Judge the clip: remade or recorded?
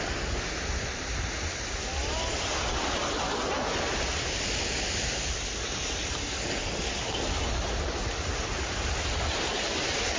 recorded